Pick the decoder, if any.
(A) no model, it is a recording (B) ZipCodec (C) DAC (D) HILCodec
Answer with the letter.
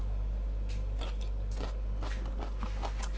A